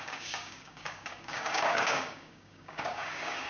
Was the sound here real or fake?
fake